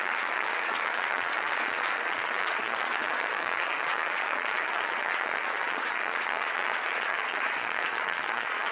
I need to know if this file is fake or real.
fake